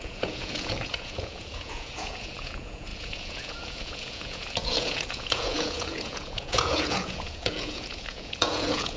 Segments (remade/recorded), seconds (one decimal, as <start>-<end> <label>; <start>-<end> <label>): 0.0-9.0 remade